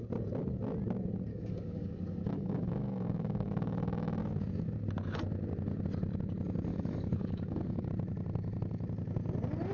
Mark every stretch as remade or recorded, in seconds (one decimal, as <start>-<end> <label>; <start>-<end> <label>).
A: 0.0-1.3 recorded; 1.3-4.2 remade; 4.2-6.7 recorded; 6.7-7.9 remade; 7.9-9.7 recorded